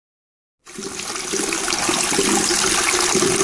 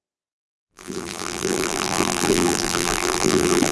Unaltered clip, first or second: first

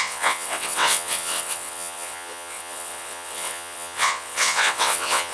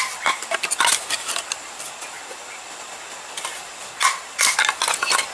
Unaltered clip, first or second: second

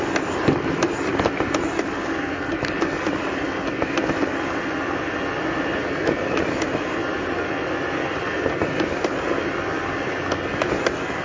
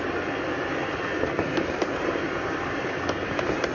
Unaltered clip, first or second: first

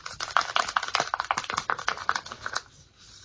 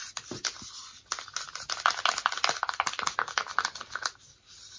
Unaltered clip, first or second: second